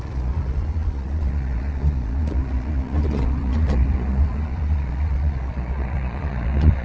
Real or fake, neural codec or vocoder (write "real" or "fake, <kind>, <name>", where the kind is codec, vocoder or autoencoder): fake, vocoder, Vocos